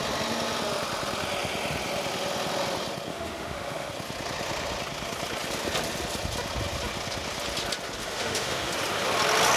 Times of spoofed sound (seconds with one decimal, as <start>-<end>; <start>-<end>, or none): 3.1-3.9; 8.0-8.7